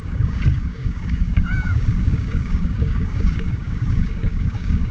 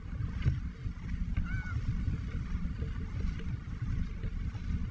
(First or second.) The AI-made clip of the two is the first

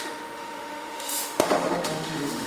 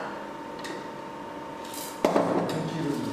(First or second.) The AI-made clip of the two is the first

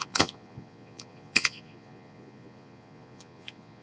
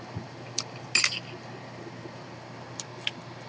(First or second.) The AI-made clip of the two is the first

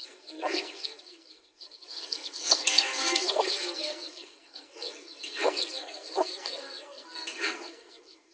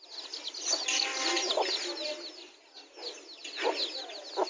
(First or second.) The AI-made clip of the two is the first